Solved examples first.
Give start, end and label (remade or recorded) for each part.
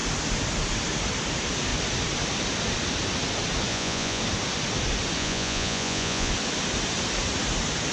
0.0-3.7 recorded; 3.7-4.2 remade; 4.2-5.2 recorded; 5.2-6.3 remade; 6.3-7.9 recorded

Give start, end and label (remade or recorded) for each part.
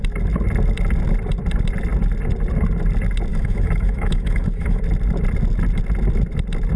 0.0-3.3 recorded; 3.3-4.8 remade; 4.8-6.8 recorded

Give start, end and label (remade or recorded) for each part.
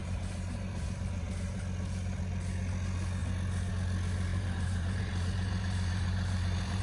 0.0-1.6 remade; 1.6-4.3 recorded; 4.3-6.8 remade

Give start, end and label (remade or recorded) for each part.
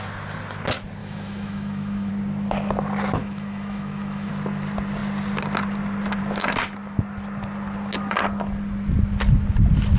0.0-1.0 recorded; 1.0-2.1 remade; 2.1-3.2 recorded; 3.2-4.3 remade; 4.3-10.0 recorded